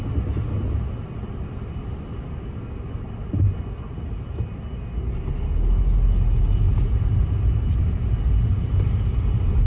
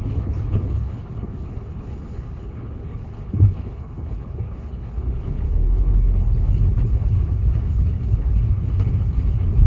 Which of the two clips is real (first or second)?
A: first